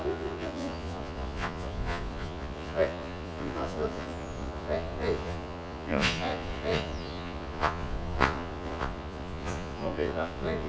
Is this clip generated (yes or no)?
yes